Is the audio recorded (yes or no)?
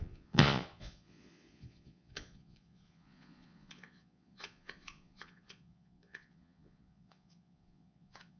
no